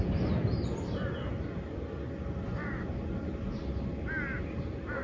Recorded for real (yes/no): yes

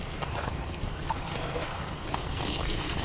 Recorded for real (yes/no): no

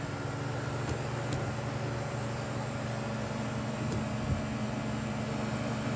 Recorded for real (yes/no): yes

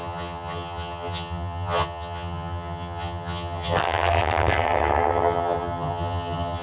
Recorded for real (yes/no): no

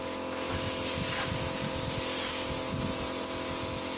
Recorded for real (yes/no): yes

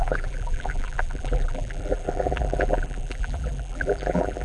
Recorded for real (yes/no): no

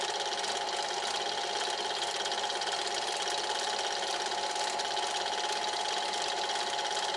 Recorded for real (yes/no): yes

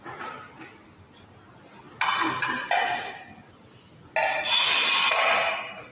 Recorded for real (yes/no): yes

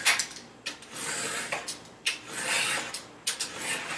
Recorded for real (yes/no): yes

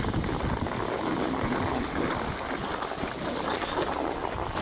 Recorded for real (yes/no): yes